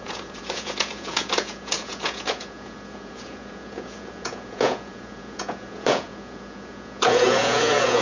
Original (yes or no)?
no